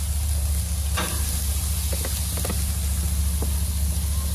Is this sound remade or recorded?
recorded